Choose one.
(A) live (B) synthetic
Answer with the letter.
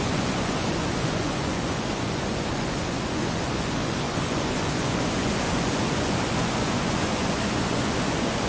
B